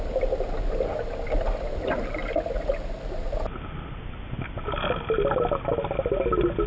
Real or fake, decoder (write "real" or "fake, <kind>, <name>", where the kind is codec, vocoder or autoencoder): real